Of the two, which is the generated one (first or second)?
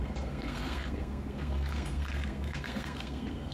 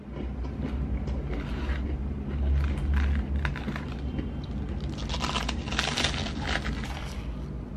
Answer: first